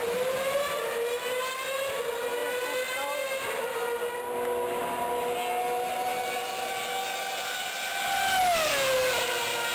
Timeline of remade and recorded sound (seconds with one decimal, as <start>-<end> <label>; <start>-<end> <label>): 0.0-6.1 recorded; 6.1-6.9 remade; 6.9-9.7 recorded